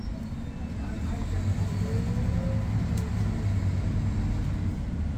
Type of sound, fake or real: real